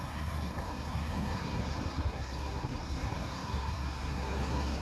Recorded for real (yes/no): no